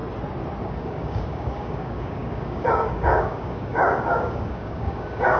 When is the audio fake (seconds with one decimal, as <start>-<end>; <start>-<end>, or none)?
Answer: 0.6-5.4

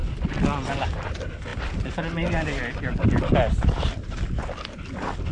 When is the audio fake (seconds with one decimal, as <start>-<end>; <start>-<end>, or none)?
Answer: none

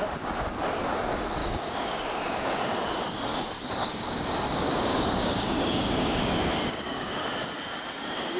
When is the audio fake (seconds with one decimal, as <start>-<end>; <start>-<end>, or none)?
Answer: 1.4-2.7; 3.8-7.2

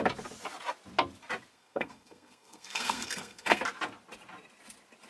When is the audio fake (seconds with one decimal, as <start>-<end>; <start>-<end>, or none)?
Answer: 1.5-3.6

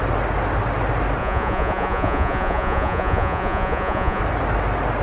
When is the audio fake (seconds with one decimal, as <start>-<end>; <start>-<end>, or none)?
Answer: 1.2-4.2